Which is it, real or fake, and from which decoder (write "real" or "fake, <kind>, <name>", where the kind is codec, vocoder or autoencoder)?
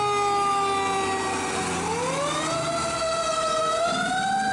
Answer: real